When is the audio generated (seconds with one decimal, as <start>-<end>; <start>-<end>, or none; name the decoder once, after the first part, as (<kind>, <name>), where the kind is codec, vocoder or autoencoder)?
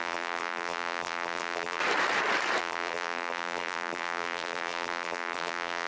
0.0-1.8 (vocoder, BigVGAN v2); 2.6-5.9